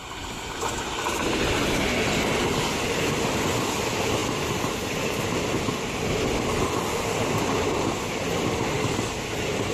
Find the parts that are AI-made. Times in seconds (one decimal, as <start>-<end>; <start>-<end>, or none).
none